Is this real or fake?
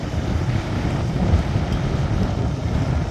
fake